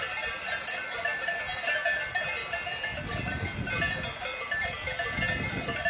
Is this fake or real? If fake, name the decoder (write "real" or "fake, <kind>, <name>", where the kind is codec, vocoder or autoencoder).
real